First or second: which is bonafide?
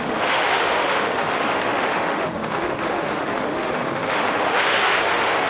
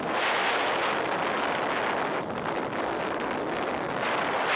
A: second